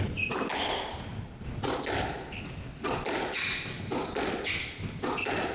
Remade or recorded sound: recorded